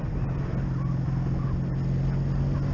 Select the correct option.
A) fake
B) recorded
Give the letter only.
B